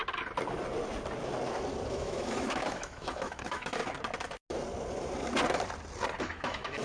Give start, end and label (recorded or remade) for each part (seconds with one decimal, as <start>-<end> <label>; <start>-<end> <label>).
0.0-1.9 recorded; 1.9-3.8 remade; 3.8-6.2 recorded; 6.2-6.8 remade